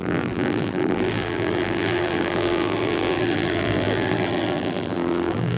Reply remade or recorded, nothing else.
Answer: remade